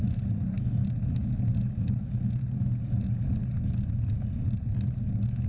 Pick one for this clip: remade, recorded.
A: recorded